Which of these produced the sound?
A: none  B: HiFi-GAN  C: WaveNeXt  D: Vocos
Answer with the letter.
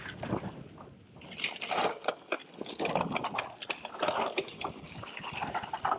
A